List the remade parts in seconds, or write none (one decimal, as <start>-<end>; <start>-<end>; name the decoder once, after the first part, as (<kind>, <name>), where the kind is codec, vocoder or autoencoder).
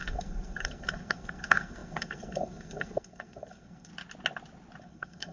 0.0-3.9 (codec, SNAC); 4.8-5.3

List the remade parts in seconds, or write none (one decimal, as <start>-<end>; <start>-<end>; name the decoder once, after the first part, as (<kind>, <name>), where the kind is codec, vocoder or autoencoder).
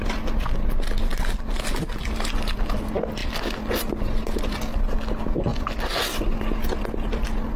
none